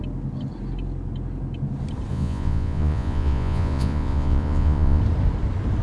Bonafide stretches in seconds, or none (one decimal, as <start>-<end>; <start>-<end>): 0.0-2.1; 5.0-5.8